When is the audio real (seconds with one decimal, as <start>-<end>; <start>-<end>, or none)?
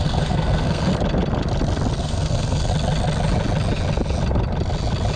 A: 0.9-2.0; 2.7-5.2